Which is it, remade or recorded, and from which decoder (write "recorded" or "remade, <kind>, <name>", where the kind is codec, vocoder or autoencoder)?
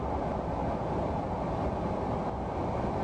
recorded